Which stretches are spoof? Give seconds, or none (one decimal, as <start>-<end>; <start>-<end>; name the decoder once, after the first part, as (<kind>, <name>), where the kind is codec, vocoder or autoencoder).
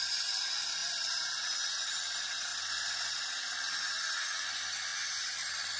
none